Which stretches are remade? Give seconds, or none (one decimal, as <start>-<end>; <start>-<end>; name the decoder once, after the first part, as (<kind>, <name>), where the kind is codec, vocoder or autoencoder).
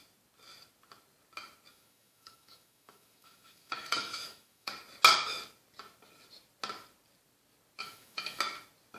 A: 1.7-4.7 (autoencoder, DAC-VAE); 7.8-8.4